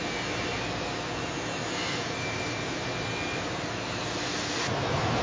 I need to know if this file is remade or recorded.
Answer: recorded